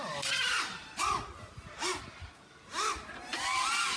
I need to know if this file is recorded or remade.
recorded